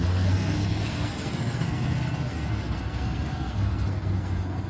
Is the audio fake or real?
fake